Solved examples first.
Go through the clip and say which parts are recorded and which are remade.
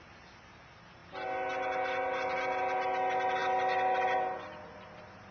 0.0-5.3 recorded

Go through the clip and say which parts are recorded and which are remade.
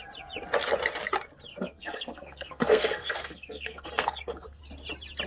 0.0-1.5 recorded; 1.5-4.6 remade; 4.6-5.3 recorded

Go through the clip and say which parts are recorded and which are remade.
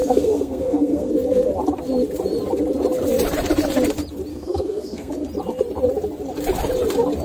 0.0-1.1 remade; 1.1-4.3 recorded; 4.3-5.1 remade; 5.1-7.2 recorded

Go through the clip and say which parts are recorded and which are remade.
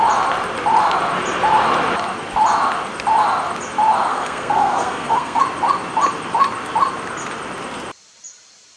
0.0-4.1 recorded; 4.1-5.4 remade; 5.4-8.8 recorded